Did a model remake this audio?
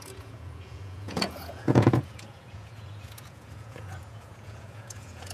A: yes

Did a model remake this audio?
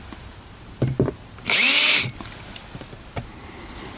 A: no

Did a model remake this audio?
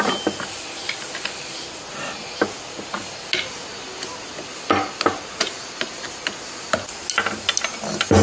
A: no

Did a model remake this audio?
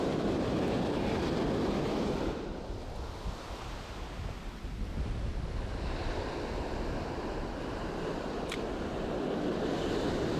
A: no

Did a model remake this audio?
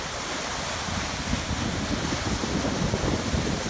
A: no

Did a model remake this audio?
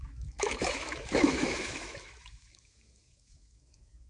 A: yes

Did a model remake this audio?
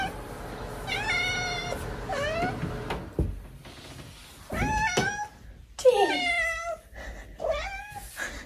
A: no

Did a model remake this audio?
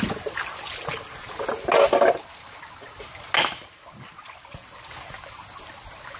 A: no